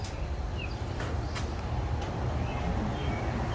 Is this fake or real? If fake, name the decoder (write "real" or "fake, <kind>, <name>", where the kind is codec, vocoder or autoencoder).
real